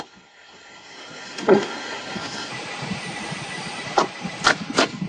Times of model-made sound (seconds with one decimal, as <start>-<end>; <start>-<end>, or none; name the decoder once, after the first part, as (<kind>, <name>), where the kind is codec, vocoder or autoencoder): 0.0-2.5 (codec, SNAC)